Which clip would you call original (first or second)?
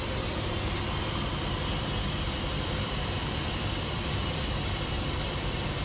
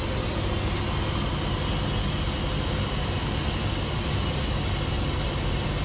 second